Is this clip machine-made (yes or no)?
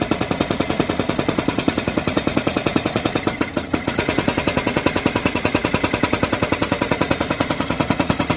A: yes